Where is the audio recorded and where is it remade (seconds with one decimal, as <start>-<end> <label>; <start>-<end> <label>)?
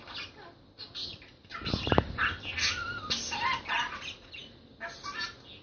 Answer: 0.0-5.6 recorded